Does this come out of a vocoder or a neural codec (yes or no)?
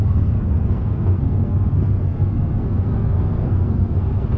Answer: yes